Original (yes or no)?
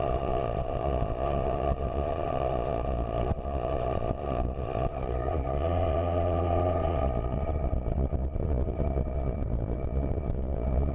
no